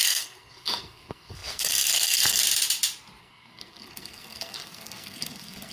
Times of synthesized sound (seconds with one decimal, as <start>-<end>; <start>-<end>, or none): 0.0-2.4; 3.2-5.7